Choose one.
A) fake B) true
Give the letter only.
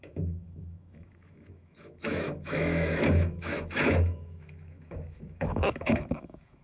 A